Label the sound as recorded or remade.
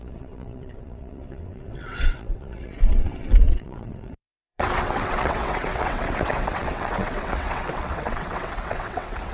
remade